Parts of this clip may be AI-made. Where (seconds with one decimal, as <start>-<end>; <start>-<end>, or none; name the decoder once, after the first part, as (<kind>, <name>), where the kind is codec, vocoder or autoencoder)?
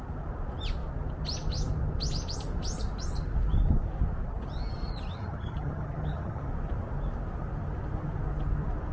5.1-6.5 (vocoder, HiFi-GAN)